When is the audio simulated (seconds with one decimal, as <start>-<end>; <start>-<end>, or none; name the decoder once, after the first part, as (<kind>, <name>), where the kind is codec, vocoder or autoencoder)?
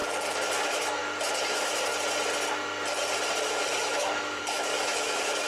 0.6-1.0 (autoencoder, DAC-VAE); 1.5-1.9; 3.6-5.5